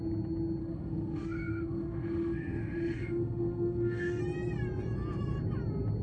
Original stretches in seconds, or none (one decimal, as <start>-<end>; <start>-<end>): 0.0-0.6; 4.2-6.0